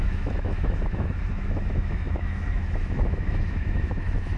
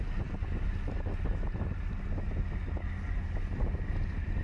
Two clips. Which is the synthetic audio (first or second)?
first